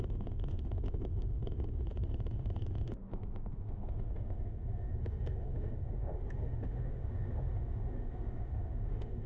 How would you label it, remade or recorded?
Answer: remade